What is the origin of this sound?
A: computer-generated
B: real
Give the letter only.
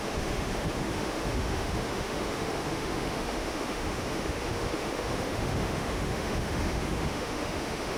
A